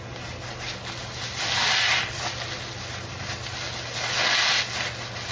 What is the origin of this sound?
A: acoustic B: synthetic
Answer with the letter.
A